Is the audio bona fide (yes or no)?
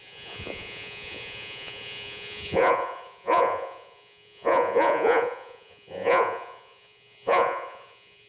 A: no